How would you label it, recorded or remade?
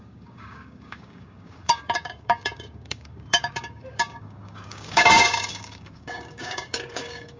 remade